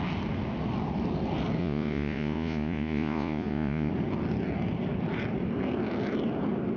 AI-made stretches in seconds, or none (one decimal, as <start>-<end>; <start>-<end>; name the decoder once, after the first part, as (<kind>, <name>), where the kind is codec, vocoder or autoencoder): 1.6-3.9 (vocoder, Vocos)